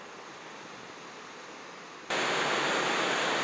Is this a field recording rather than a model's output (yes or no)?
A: yes